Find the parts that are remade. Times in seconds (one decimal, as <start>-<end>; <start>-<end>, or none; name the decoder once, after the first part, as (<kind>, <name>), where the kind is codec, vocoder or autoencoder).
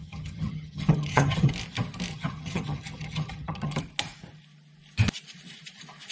0.0-1.5 (vocoder, HiFi-GAN); 2.1-3.8